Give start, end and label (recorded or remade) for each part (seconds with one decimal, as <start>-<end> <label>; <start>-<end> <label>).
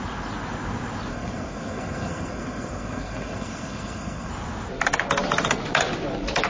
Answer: 0.0-1.1 recorded; 1.1-4.3 remade; 4.3-6.5 recorded